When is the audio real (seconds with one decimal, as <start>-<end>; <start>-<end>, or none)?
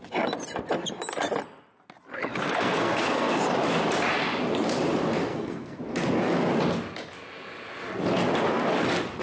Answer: 0.0-2.4; 3.4-5.3; 5.8-9.2